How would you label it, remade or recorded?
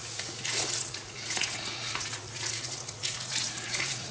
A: remade